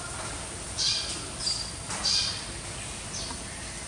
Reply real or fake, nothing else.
real